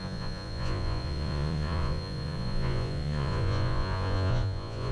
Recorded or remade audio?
remade